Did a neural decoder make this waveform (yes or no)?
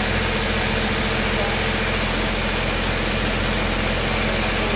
no